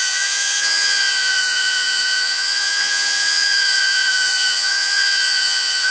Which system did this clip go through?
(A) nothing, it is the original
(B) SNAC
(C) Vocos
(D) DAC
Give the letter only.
C